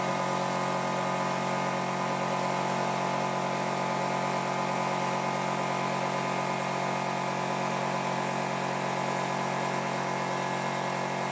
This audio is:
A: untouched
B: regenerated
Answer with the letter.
A